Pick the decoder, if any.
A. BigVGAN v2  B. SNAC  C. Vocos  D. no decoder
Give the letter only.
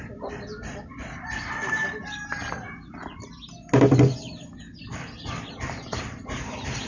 D